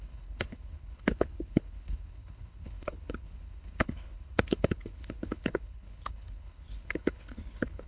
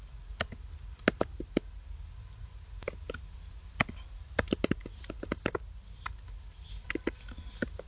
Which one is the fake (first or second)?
first